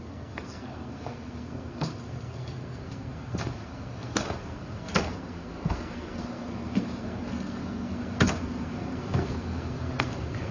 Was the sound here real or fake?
fake